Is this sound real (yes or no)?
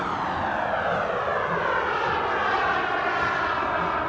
yes